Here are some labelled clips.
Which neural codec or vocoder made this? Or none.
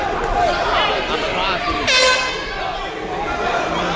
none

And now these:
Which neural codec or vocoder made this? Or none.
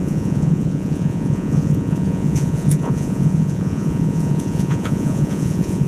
vocoder, Vocos